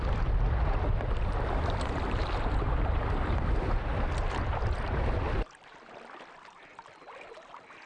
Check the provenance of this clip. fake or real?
fake